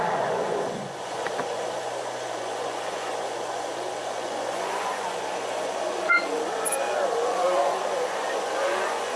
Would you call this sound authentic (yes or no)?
no